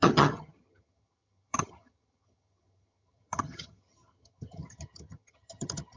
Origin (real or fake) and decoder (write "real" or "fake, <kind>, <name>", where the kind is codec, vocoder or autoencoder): fake, vocoder, HiFi-GAN